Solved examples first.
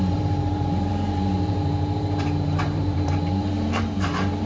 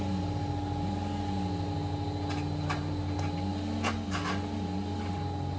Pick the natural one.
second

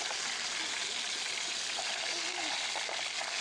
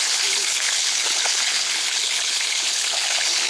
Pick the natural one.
first